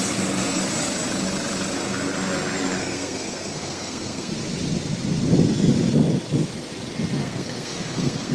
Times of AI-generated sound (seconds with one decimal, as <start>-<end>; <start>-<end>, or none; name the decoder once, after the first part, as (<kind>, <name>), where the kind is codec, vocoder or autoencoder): 2.8-4.3 (codec, SNAC); 7.2-8.3